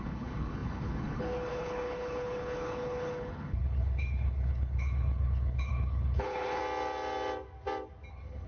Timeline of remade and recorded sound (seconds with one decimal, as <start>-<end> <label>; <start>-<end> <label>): 0.0-6.6 remade; 6.6-8.1 recorded; 8.1-8.5 remade